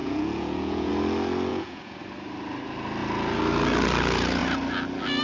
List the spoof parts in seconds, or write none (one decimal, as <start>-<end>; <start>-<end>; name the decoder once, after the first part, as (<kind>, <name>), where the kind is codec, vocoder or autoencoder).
0.0-0.9 (vocoder, Vocos); 1.5-2.0